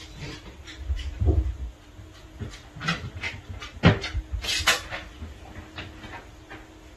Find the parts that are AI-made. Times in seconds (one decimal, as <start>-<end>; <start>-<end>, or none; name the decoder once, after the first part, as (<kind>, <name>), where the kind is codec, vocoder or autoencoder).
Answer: 0.7-1.2 (vocoder, BigVGAN v2)

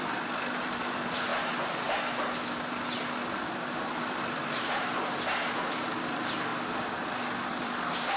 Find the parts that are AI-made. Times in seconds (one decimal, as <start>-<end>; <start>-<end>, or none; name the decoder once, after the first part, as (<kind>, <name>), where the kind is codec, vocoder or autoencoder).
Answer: 0.0-1.3 (vocoder, BigVGAN v2); 3.9-8.2

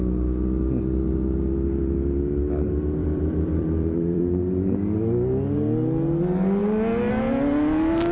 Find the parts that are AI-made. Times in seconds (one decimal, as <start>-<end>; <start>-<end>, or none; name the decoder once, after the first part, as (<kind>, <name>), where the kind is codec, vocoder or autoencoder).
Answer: 3.0-4.2 (vocoder, BigVGAN v2)

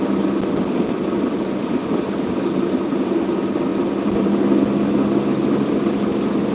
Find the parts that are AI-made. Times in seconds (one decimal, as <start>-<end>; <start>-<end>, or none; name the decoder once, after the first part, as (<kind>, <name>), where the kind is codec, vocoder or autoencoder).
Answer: 1.8-2.3 (vocoder, BigVGAN v2)